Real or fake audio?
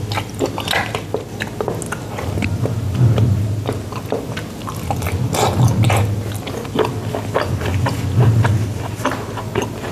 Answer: real